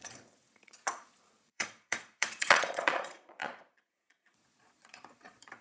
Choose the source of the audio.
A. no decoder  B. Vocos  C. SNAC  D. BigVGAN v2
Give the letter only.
B